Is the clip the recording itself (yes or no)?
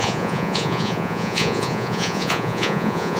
no